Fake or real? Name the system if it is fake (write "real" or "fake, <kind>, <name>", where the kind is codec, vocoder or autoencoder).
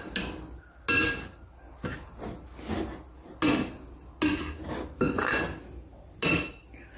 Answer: real